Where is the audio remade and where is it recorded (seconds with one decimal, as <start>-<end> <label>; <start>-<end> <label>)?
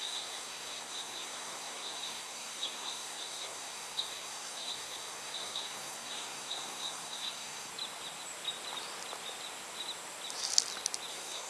0.0-7.7 remade; 7.7-11.1 recorded; 11.1-11.5 remade